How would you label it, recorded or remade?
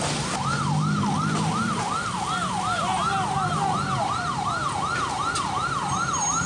recorded